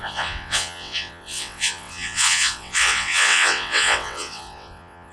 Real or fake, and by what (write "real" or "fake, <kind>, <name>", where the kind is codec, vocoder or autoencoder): fake, vocoder, WaveNeXt